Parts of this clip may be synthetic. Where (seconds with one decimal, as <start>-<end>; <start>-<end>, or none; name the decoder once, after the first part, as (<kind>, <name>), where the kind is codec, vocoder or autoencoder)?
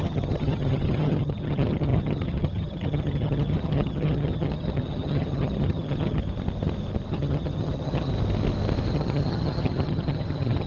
0.0-6.2 (vocoder, HiFi-GAN); 7.1-8.1; 8.9-10.7